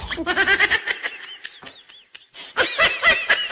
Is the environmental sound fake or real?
real